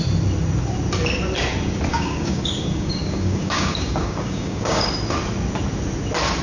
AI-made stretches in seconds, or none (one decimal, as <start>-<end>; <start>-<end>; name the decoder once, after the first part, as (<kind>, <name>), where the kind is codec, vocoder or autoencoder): 1.9-4.9 (codec, DAC)